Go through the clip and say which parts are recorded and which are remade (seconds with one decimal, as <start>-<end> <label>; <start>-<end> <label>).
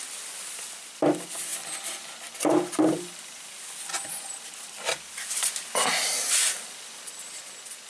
0.0-7.9 recorded